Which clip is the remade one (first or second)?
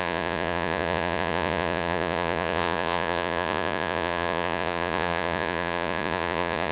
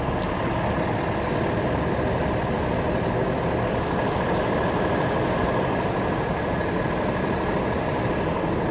first